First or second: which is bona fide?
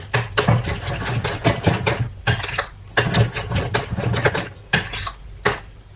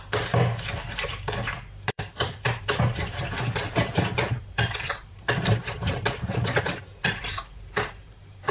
first